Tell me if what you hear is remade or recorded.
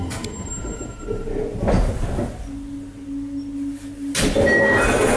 recorded